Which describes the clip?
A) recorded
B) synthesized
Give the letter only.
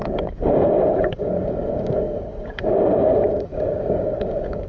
B